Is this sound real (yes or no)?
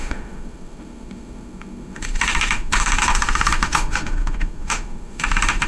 no